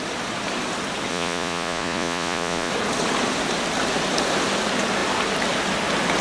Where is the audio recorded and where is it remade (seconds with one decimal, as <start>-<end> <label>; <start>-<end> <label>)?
0.0-1.1 recorded; 1.1-2.7 remade; 2.7-6.2 recorded